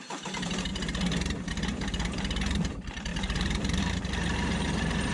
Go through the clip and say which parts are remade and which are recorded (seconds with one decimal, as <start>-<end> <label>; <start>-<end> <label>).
0.0-0.7 remade; 0.7-1.5 recorded; 1.5-5.1 remade